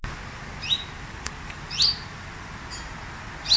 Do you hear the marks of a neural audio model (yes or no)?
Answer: no